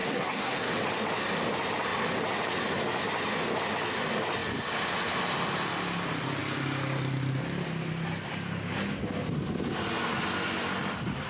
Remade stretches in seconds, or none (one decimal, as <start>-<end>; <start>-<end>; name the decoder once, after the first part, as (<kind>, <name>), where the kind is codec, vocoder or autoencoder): 0.0-0.7 (codec, SNAC)